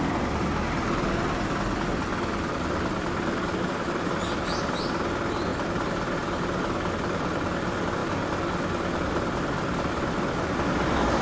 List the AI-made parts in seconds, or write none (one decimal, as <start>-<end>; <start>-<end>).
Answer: none